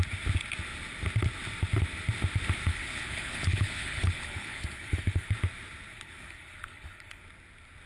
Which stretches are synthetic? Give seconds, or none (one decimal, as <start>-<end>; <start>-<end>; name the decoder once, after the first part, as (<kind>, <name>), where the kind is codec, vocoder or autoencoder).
2.7-5.3 (codec, HILCodec); 5.9-7.2